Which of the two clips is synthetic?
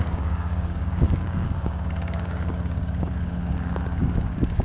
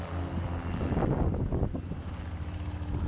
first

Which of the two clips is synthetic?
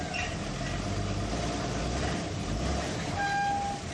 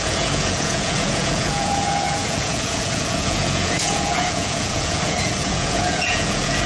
second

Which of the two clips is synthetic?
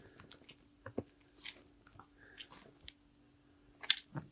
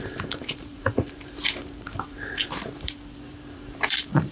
second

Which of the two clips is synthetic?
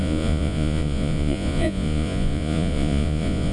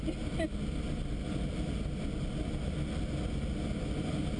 first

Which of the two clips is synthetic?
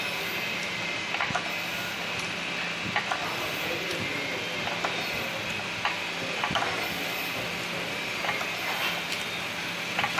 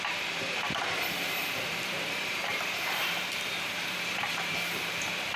second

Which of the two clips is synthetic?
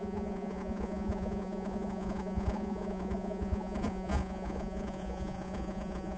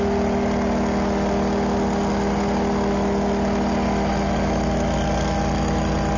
first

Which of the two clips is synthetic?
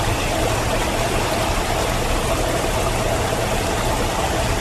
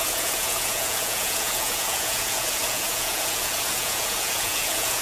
second